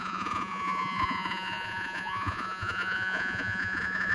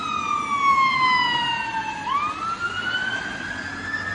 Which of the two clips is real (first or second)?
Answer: second